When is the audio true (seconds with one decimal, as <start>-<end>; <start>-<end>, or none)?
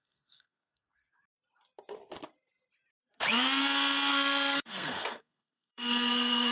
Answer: 1.0-4.1